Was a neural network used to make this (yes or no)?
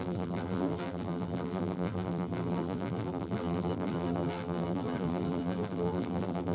yes